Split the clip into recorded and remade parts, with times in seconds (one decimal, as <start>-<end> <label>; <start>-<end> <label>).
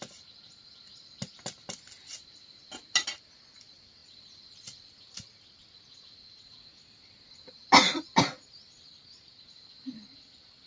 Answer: 0.0-10.7 recorded